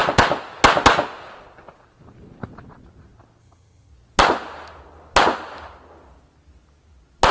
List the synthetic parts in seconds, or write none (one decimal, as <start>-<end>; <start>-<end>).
3.4-3.9